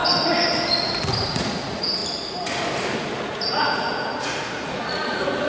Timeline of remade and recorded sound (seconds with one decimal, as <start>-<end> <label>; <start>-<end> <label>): 0.0-1.2 recorded; 1.2-2.0 remade; 2.0-3.2 recorded; 3.2-5.5 remade